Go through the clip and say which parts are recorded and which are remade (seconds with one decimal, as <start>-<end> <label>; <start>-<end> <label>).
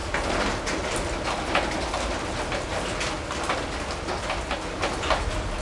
0.0-5.6 recorded